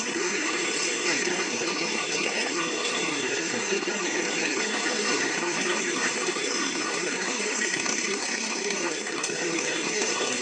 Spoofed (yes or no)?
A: yes